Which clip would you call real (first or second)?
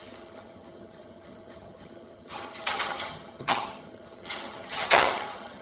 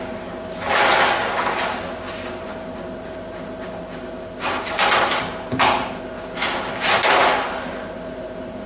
second